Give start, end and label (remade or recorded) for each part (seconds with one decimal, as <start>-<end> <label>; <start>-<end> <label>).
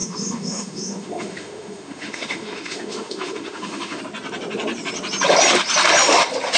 0.0-4.0 remade; 4.0-6.6 recorded